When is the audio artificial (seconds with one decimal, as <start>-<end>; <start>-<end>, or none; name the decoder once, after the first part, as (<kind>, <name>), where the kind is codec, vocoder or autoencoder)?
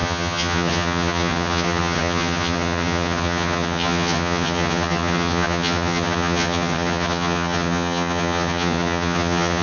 0.0-9.6 (vocoder, HiFi-GAN)